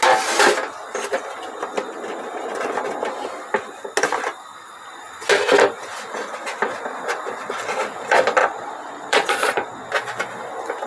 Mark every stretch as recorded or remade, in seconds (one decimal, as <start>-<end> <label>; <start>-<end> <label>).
0.0-8.4 recorded; 8.4-9.9 remade; 9.9-10.9 recorded